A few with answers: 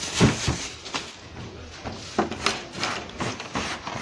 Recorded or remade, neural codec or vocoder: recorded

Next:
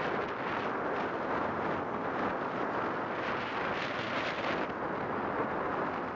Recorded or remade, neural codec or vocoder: recorded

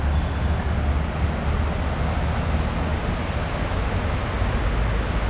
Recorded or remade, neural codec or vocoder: recorded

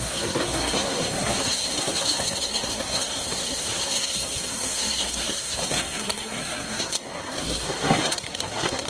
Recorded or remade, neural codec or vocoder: remade, codec, SNAC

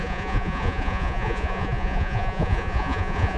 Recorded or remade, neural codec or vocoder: remade, vocoder, Vocos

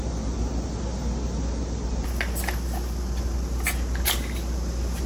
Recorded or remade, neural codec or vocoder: recorded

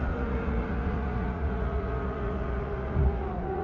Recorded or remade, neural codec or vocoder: remade, vocoder, Vocos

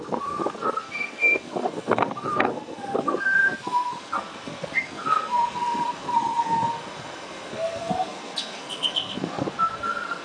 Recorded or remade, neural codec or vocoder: remade, codec, SNAC